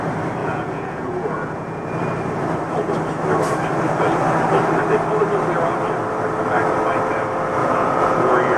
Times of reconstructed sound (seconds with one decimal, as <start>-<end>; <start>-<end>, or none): 0.4-2.0; 7.6-8.6